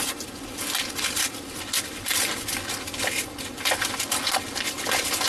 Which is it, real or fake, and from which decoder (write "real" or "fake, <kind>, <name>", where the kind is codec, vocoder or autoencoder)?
real